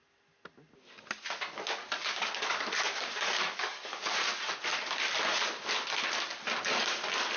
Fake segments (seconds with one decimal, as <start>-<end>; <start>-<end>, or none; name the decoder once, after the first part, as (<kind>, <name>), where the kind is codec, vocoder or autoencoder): 2.0-4.1 (codec, DAC); 4.7-5.2